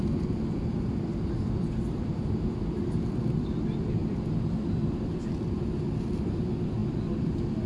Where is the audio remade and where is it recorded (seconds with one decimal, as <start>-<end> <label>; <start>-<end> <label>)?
0.0-7.7 recorded